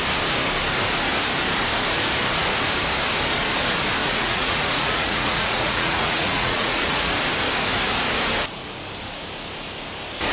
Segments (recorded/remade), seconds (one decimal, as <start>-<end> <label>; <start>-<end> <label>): 0.0-4.0 recorded; 4.0-7.1 remade; 7.1-10.3 recorded